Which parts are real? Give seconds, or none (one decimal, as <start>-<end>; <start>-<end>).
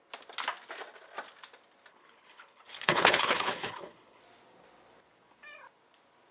0.0-1.9; 4.2-6.3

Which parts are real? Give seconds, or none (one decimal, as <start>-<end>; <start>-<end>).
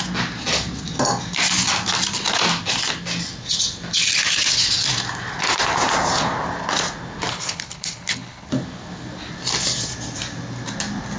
0.0-7.3; 8.5-11.2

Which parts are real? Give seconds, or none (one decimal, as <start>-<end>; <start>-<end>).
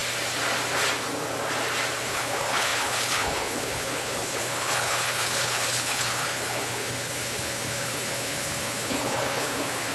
0.0-2.0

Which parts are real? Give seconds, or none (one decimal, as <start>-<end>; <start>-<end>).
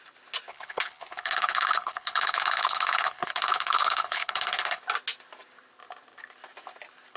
0.0-0.5; 4.8-7.2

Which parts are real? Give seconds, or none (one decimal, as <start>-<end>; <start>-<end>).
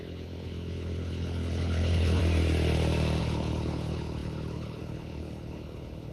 2.2-3.2